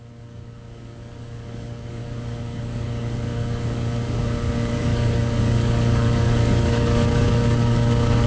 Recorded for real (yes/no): no